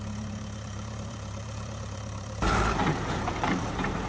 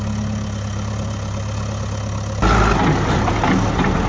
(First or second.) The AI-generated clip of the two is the first